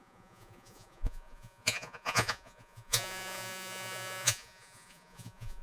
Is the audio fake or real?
fake